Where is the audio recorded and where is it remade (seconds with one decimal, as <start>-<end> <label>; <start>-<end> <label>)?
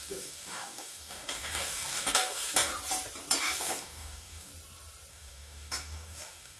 0.0-2.7 remade; 2.7-3.4 recorded; 3.4-4.5 remade; 4.5-5.1 recorded; 5.1-6.6 remade